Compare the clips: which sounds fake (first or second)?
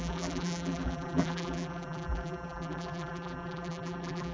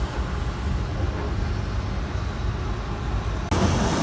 first